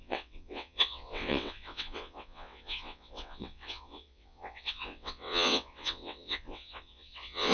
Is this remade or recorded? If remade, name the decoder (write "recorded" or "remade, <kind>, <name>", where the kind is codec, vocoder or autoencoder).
remade, vocoder, WaveNeXt